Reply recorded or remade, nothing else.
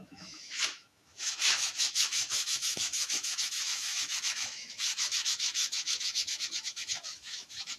remade